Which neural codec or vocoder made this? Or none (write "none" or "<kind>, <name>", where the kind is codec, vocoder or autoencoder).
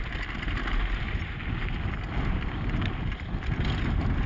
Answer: none